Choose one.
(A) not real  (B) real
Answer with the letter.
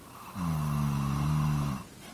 B